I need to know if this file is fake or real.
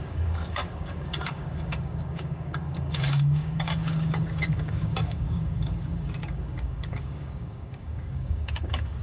fake